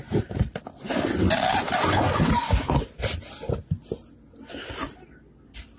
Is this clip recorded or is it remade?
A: recorded